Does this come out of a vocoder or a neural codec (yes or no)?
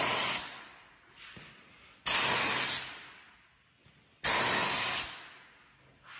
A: no